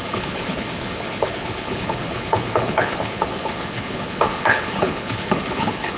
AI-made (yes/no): yes